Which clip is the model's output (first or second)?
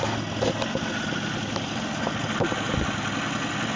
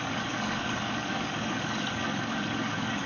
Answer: second